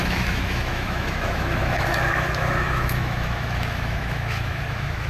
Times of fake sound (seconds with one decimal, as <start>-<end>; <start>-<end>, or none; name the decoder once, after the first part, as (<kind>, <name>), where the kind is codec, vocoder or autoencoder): 0.0-5.1 (autoencoder, DAC-VAE)